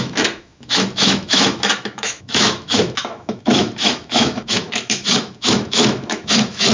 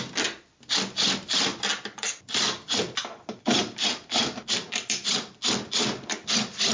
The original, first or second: second